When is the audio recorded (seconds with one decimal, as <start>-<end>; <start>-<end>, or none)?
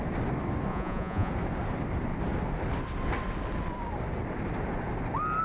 0.0-0.7; 1.3-5.4